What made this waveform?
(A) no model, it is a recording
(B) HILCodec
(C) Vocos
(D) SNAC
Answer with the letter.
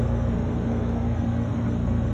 D